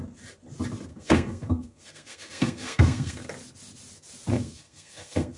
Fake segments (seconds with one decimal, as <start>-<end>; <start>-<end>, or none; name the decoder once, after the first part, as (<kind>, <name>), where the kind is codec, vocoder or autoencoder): 0.9-3.3 (codec, SNAC); 4.3-5.4